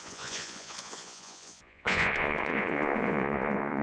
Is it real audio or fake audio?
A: fake